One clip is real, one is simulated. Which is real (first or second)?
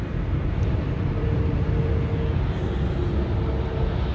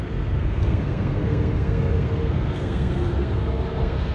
first